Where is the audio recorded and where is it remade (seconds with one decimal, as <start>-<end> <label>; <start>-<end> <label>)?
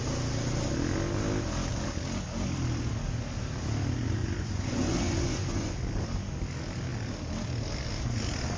0.0-4.2 recorded; 4.2-5.8 remade; 5.8-8.6 recorded